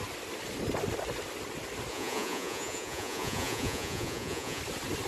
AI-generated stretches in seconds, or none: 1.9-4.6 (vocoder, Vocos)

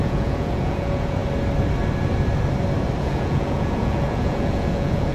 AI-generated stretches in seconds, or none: 0.0-1.2 (vocoder, Vocos); 3.0-5.1

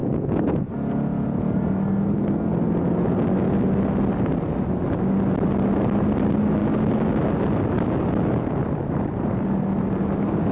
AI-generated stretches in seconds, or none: 0.0-0.7 (vocoder, Vocos)

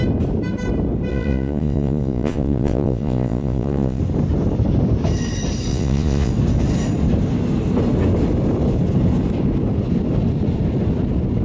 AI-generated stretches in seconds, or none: 1.1-4.0 (vocoder, Vocos); 5.7-6.3

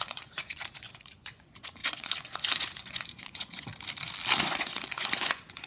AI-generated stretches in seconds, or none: 0.0-3.7 (vocoder, Vocos); 4.4-5.7

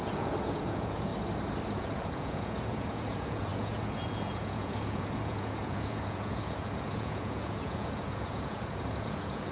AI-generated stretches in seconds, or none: 0.0-1.1 (vocoder, Vocos); 1.7-9.5